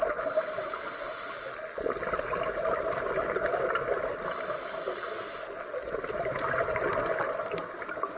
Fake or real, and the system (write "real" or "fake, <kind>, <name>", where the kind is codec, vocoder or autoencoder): real